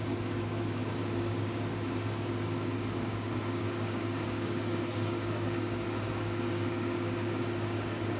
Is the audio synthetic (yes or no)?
yes